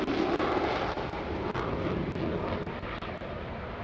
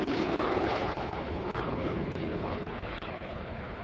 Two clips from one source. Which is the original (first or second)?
first